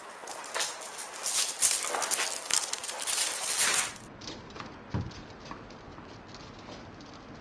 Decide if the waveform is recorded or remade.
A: recorded